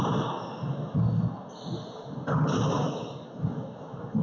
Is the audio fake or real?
real